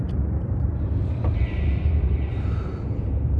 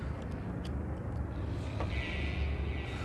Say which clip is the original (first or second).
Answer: second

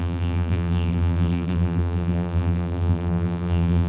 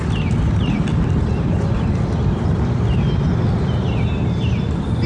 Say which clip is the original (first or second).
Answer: second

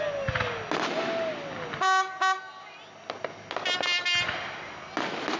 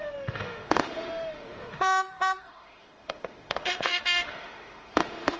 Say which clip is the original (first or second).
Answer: first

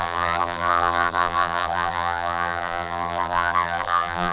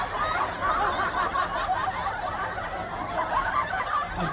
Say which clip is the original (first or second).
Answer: second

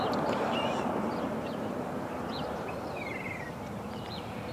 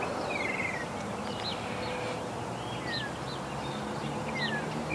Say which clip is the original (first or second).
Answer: second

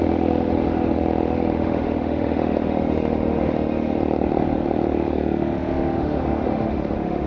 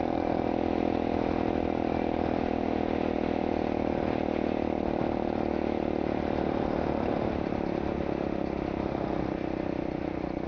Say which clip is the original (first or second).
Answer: second